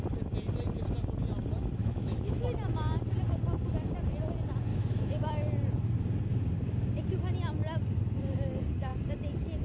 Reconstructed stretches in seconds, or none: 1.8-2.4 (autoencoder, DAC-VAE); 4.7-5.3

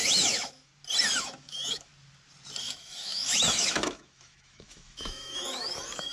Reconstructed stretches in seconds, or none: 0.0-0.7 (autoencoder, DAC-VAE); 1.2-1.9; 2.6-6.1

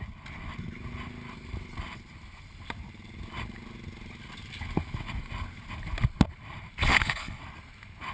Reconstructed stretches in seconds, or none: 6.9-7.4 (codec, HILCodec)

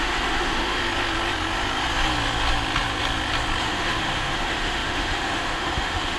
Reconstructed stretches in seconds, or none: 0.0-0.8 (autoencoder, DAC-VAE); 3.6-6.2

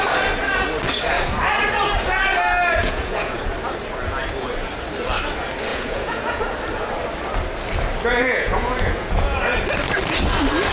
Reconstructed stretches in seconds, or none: 2.8-3.4 (vocoder, Vocos); 5.7-6.4; 8.1-9.4

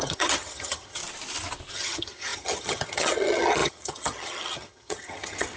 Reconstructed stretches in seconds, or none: 0.0-1.0 (vocoder, HiFi-GAN); 1.7-5.6

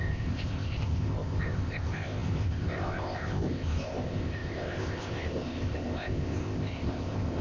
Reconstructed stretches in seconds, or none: 0.0-7.4 (codec, ZipCodec)

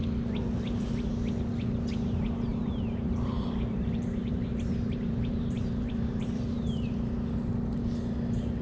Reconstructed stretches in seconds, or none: 2.5-6.9 (vocoder, BigVGAN v2)